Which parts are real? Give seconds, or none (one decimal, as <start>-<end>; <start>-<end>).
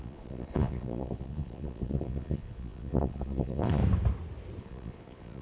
3.8-4.6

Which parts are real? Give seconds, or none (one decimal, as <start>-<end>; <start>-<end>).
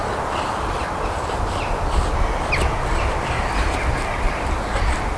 0.0-5.2